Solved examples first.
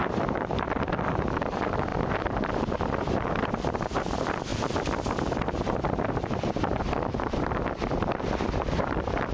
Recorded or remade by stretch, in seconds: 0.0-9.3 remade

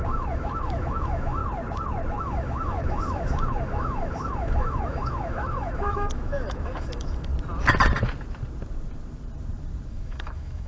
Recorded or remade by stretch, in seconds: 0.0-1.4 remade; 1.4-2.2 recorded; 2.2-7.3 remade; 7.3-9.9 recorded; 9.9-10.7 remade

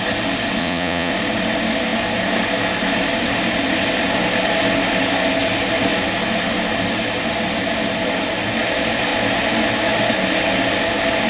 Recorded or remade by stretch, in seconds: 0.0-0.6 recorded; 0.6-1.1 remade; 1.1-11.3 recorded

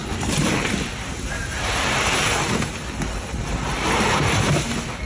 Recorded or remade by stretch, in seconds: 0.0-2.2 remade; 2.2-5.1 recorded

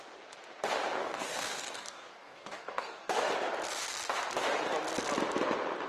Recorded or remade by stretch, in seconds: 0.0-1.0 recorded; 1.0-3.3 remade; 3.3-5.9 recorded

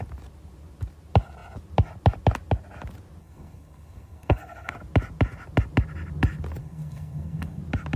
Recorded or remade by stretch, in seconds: 0.0-3.2 recorded; 3.2-4.7 remade; 4.7-6.6 recorded; 6.6-7.6 remade; 7.6-8.0 recorded